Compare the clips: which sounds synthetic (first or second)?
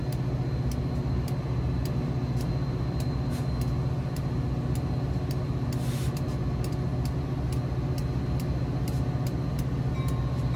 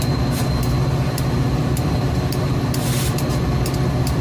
second